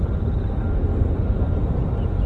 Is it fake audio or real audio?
real